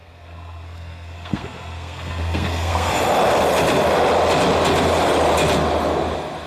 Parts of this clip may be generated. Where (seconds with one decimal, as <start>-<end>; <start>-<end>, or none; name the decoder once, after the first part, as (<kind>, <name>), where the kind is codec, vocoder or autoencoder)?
0.0-2.9 (codec, SNAC)